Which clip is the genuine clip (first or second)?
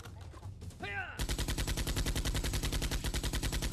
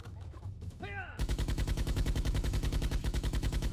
first